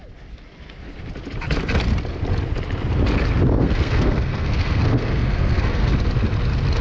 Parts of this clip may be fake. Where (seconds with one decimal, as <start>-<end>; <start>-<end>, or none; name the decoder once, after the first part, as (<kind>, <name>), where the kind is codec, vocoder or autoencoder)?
3.6-5.9 (codec, SNAC)